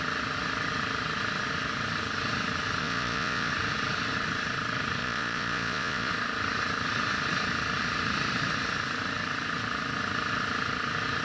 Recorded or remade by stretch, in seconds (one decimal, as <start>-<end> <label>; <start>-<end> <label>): 0.0-2.8 recorded; 2.8-3.5 remade; 3.5-5.0 recorded; 5.0-6.1 remade; 6.1-11.2 recorded